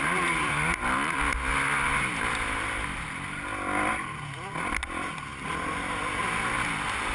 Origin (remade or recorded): recorded